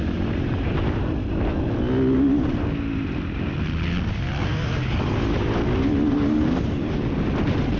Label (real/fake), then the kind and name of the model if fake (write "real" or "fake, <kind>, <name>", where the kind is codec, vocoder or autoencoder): real